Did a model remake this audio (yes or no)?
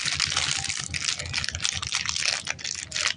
no